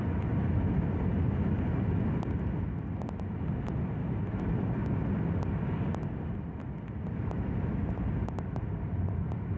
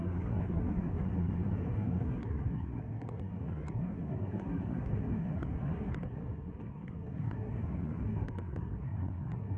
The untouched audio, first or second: first